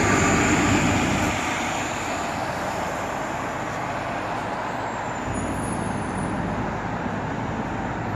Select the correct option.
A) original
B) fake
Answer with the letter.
A